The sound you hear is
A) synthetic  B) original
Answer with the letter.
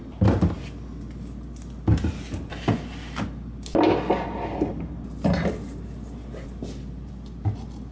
B